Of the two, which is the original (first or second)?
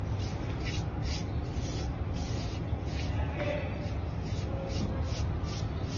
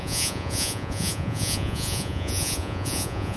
first